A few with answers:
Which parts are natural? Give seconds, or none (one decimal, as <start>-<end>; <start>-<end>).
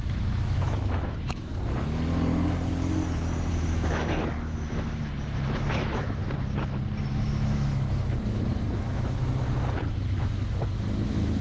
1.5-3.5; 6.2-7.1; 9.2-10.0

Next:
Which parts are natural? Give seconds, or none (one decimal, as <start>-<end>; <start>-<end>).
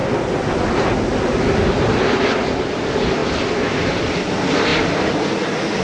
0.0-5.8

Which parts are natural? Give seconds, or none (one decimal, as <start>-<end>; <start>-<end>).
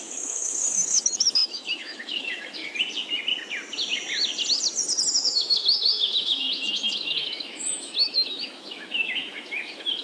2.6-5.1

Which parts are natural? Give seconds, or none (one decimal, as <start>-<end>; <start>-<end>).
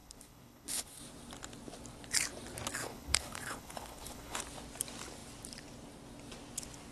1.0-2.8; 4.4-6.9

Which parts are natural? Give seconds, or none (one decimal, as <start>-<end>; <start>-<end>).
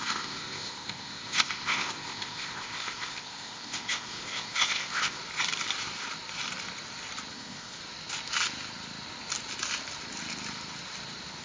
5.2-7.3; 7.8-11.4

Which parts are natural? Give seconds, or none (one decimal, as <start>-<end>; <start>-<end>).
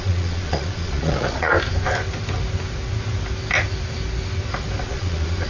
1.5-4.8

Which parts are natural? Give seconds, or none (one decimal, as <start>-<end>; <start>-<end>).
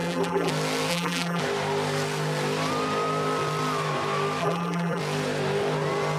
0.5-0.9; 1.4-4.4; 5.0-6.2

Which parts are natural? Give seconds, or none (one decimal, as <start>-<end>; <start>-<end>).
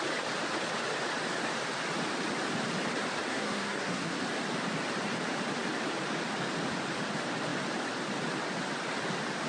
0.0-3.3; 4.2-9.5